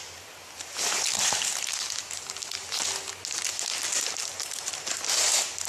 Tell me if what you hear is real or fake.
real